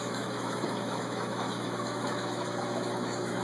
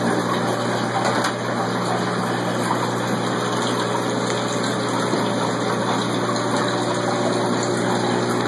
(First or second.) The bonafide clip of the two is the second